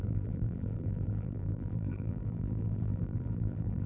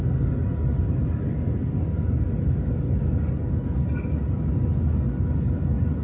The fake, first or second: first